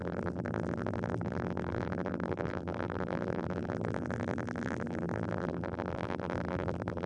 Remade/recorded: remade